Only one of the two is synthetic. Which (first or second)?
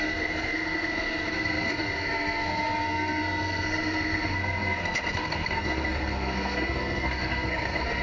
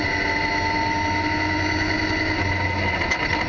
first